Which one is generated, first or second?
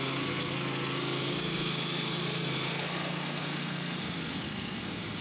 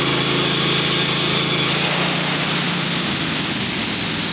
first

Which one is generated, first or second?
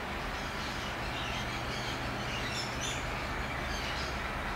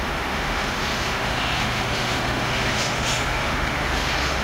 second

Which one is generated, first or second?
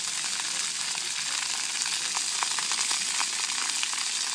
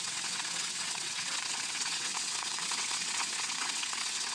second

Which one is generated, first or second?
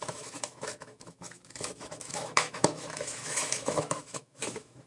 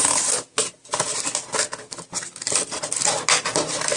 first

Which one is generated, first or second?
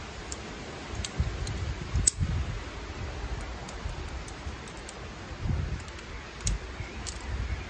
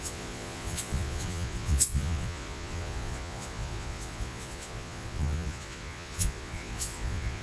second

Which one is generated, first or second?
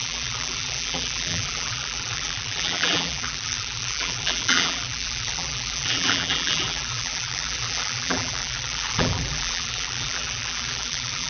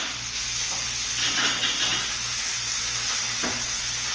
first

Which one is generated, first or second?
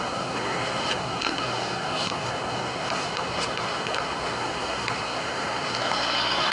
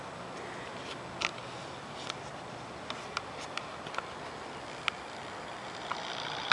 first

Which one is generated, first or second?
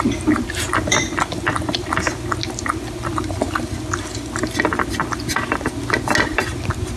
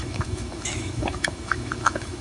second